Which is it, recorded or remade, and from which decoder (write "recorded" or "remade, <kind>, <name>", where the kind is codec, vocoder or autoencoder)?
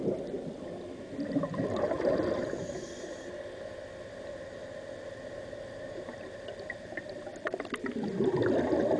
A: recorded